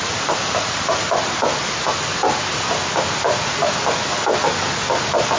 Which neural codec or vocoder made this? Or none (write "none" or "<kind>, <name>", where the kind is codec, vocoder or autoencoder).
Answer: none